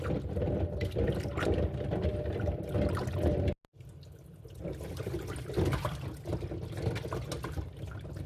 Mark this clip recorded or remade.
recorded